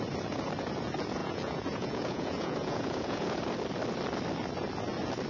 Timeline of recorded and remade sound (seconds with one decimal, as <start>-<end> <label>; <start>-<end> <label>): 0.0-1.2 recorded; 1.2-3.5 remade; 3.5-5.3 recorded